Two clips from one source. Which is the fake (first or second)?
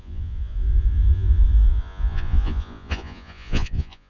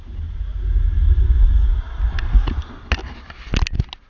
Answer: first